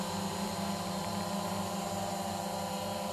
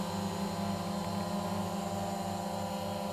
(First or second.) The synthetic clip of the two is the first